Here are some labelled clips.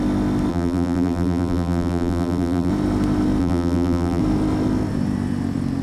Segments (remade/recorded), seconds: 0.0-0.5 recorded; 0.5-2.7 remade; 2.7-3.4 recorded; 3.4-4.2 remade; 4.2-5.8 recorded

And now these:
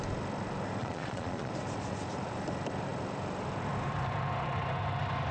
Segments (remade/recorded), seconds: 0.0-0.8 recorded; 0.8-1.5 remade; 1.5-5.3 recorded

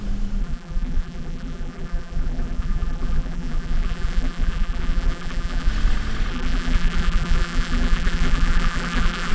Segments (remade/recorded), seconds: 0.0-0.4 recorded; 0.4-5.7 remade; 5.7-6.3 recorded; 6.3-9.3 remade

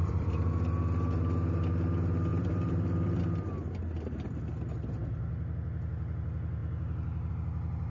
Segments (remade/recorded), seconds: 0.0-0.5 remade; 0.5-2.3 recorded; 2.3-3.2 remade; 3.2-7.9 recorded